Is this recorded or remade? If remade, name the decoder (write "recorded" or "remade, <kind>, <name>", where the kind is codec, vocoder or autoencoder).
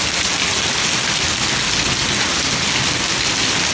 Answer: recorded